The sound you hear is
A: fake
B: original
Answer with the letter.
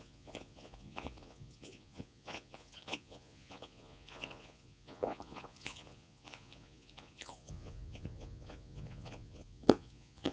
A